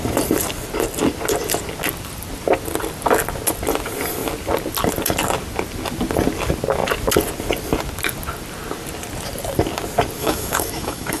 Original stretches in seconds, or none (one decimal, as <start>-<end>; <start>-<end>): 0.0-10.2